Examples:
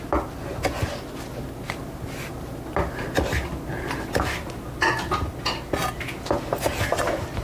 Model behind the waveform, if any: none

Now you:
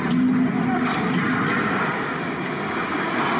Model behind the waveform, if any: none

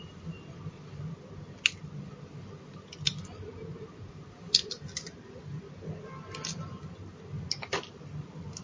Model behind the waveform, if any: none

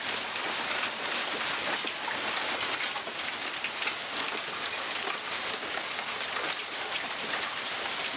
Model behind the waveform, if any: none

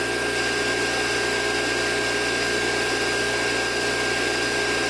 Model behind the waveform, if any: none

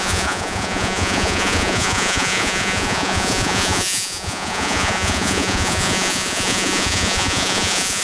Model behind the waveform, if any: vocoder, Vocos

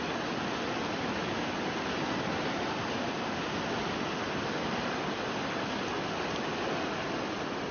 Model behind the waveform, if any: none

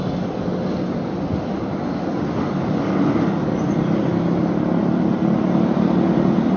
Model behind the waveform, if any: none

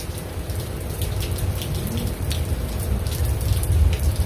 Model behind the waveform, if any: vocoder, BigVGAN v2